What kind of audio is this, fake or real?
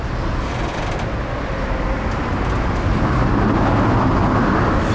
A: real